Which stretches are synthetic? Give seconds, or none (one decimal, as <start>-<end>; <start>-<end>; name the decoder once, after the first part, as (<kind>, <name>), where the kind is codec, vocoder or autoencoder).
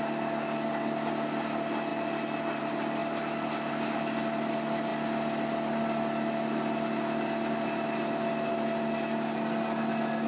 none